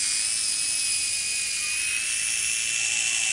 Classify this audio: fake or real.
real